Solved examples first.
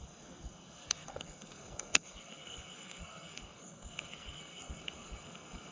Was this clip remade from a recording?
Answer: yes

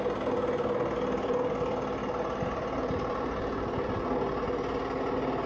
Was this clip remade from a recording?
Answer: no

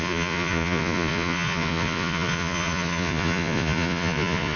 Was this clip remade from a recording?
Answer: yes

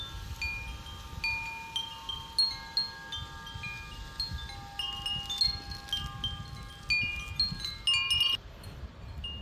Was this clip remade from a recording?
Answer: no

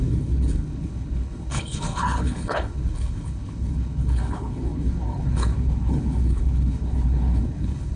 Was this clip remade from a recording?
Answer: yes